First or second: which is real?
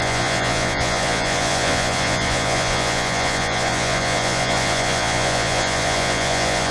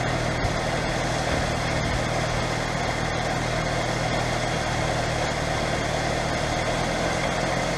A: second